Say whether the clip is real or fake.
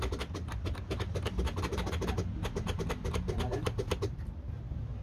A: real